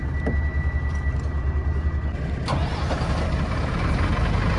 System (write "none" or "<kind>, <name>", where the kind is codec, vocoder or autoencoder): none